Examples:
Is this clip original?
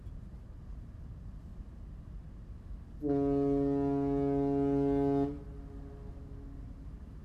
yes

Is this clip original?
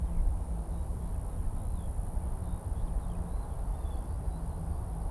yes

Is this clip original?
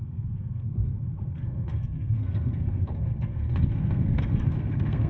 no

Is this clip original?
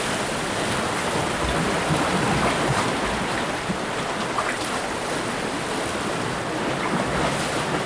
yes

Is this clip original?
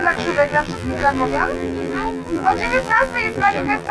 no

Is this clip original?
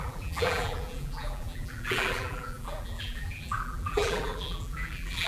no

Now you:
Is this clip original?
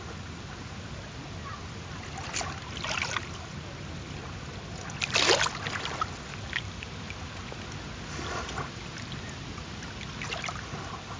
yes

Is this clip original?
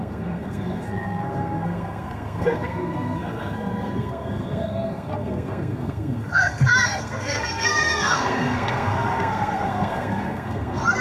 no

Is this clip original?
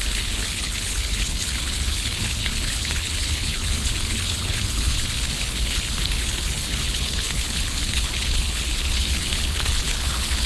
no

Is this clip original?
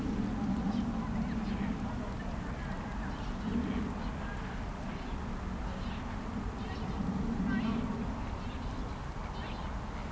yes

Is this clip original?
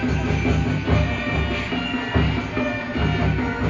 yes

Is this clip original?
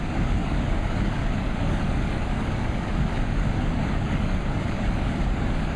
no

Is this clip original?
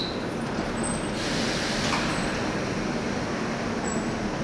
yes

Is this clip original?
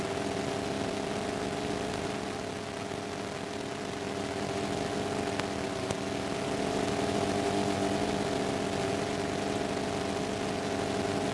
yes